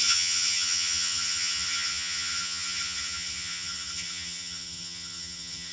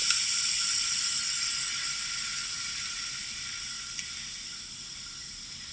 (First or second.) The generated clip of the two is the first